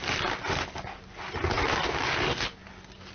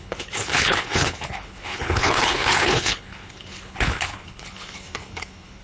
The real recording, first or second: first